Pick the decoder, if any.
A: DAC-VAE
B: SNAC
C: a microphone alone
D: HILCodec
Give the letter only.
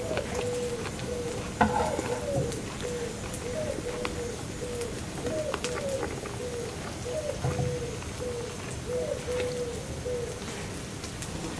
C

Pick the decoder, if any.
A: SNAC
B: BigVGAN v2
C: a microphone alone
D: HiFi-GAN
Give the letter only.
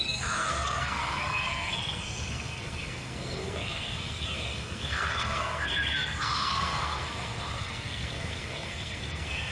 A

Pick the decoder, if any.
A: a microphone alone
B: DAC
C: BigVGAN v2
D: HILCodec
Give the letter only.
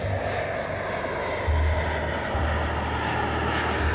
A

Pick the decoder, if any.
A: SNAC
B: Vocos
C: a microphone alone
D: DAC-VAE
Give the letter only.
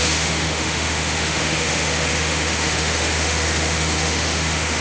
D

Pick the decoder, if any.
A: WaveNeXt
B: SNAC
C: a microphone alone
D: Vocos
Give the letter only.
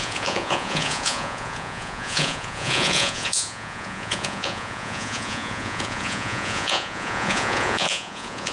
D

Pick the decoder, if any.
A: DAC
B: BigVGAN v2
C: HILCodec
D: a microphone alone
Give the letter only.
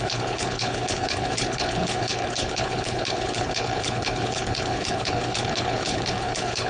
C